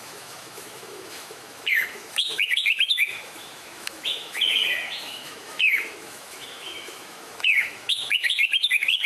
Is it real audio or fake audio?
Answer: fake